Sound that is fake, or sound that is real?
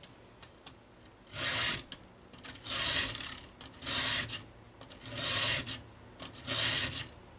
real